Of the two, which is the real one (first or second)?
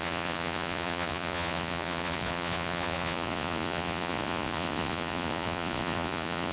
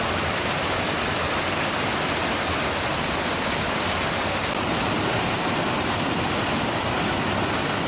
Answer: second